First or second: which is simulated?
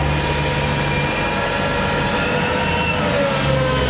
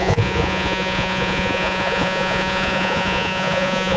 second